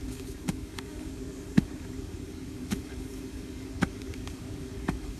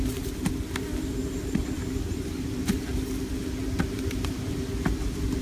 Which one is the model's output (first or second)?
first